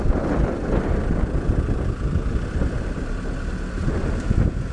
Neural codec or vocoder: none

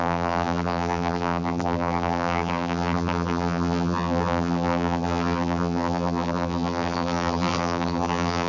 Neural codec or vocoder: vocoder, BigVGAN v2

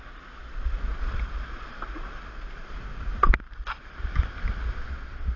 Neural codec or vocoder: none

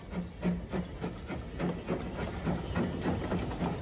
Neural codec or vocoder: none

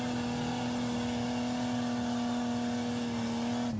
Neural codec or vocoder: none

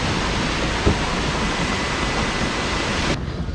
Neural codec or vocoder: none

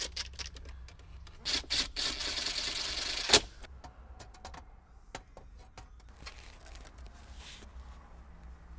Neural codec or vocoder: none